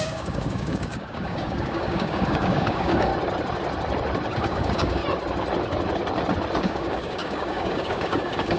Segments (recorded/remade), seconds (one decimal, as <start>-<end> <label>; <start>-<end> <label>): 0.0-3.1 remade; 3.1-4.4 recorded; 4.4-5.0 remade; 5.0-6.6 recorded; 6.6-8.6 remade